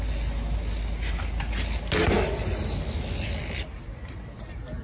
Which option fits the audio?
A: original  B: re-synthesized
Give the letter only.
A